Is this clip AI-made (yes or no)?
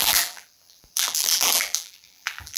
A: yes